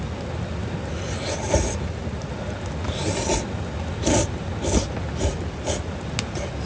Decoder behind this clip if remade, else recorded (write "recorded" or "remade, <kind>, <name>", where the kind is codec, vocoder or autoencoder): recorded